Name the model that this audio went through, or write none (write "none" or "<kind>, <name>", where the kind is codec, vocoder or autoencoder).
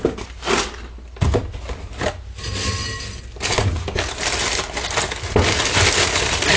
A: none